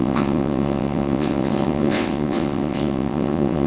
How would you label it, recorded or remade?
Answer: remade